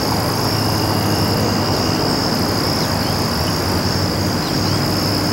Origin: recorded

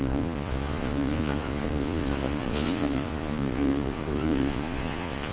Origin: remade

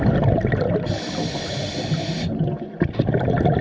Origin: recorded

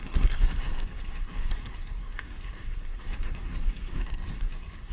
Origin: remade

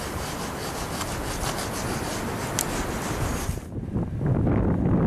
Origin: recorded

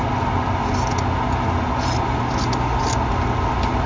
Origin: recorded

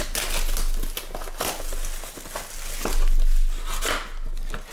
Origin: recorded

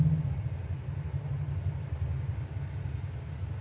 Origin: recorded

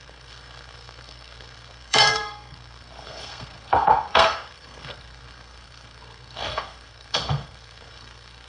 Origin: remade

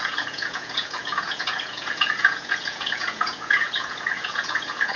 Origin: remade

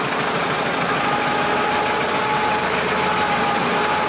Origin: recorded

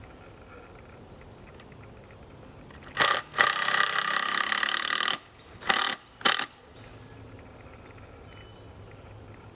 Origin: recorded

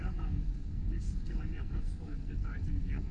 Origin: remade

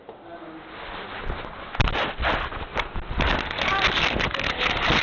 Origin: recorded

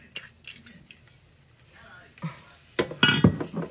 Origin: recorded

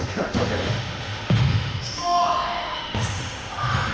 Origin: remade